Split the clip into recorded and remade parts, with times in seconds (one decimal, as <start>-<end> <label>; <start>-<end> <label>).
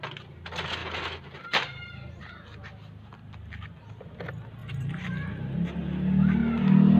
0.0-0.8 recorded; 0.8-2.2 remade; 2.2-4.6 recorded; 4.6-5.3 remade; 5.3-7.0 recorded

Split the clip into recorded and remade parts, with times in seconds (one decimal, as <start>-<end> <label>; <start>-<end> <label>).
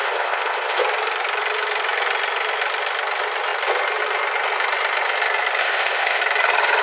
0.0-0.8 remade; 0.8-5.6 recorded; 5.6-6.2 remade; 6.2-6.8 recorded